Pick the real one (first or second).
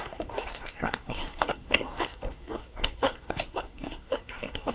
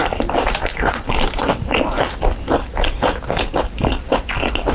second